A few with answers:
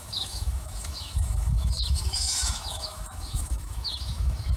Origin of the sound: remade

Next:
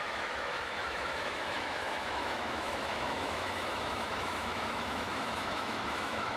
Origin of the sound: remade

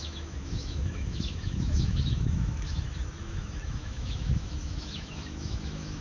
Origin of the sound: remade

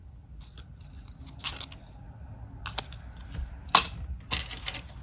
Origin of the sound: recorded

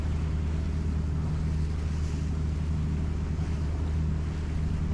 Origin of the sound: recorded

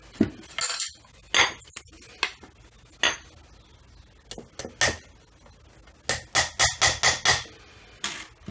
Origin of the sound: recorded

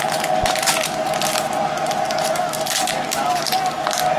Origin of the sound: recorded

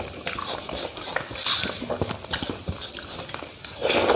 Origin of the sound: recorded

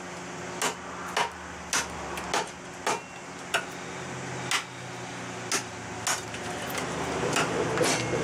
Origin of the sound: recorded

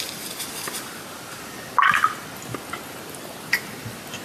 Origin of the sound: recorded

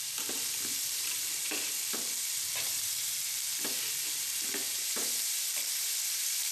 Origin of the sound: recorded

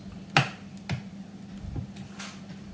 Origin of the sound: recorded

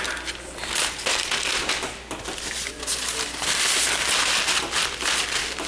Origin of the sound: recorded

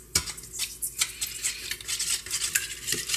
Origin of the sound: recorded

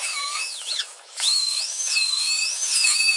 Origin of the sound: remade